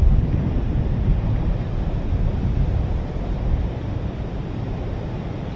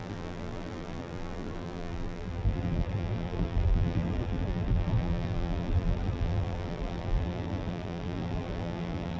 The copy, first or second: second